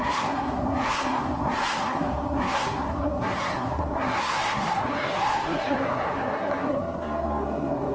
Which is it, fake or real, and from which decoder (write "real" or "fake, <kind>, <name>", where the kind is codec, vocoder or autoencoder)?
fake, codec, SNAC